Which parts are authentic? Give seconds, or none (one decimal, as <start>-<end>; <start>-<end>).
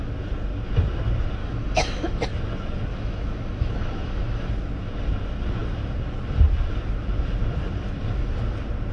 0.0-1.4; 2.2-2.9; 4.5-8.9